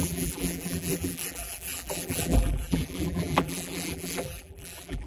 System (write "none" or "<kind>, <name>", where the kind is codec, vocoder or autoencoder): vocoder, BigVGAN v2